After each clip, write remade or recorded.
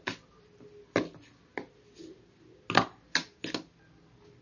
recorded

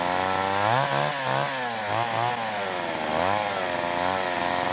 recorded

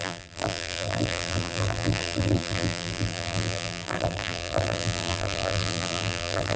remade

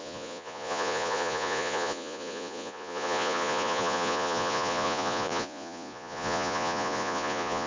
remade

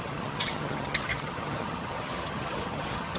remade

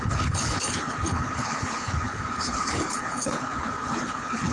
remade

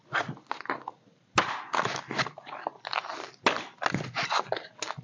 recorded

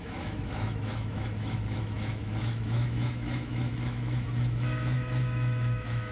remade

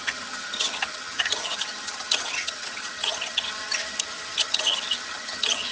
remade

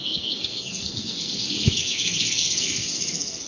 remade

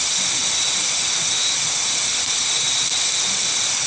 recorded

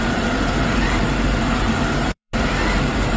remade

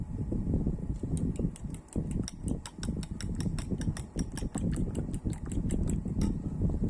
recorded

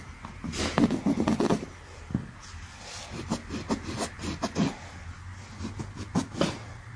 recorded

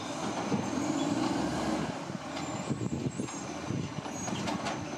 recorded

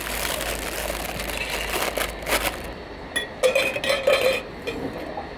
recorded